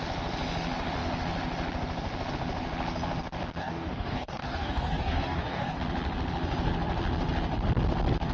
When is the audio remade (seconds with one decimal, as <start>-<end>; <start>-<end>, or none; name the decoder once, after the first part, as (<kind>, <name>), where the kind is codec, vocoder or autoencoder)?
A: 3.6-5.8 (codec, DAC)